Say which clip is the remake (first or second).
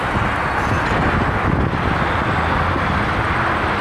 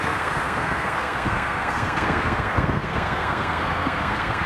second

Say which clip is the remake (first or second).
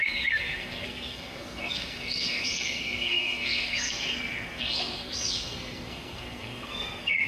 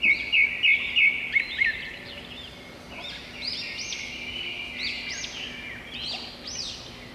first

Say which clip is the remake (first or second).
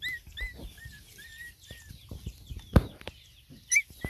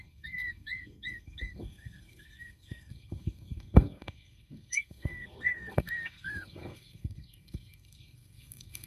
second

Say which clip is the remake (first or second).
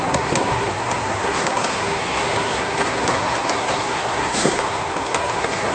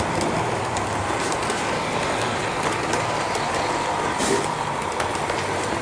first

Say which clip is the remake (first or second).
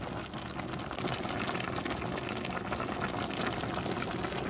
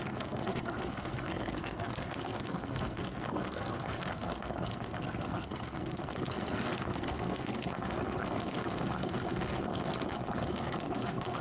second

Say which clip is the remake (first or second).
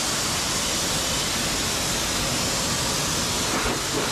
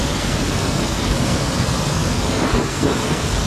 second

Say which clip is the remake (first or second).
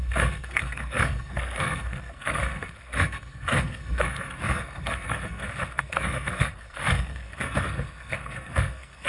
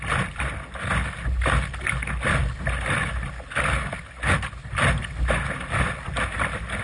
first